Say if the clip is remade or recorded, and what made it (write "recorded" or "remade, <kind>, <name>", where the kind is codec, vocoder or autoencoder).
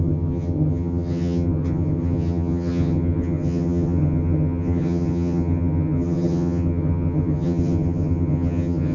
remade, vocoder, HiFi-GAN